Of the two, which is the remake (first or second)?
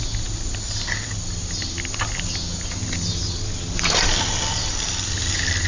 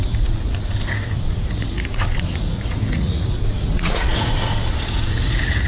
second